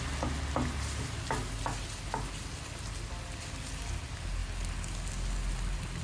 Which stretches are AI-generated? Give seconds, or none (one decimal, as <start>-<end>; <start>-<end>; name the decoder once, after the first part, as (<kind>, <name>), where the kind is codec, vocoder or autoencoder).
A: none